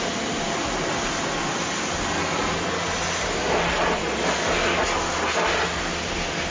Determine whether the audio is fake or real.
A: real